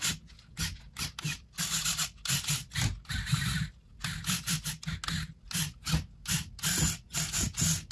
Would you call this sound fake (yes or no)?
no